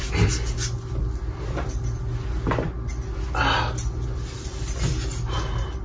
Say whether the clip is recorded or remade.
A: recorded